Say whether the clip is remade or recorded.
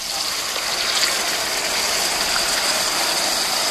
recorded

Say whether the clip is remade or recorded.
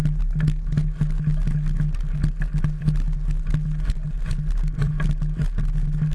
recorded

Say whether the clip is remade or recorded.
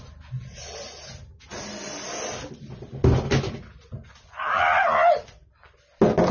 recorded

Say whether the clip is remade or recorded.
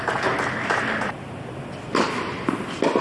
recorded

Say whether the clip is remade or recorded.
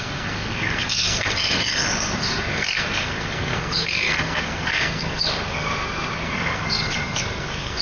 remade